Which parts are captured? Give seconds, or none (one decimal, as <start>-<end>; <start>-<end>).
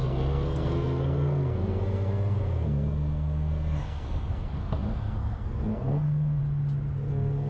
6.4-7.1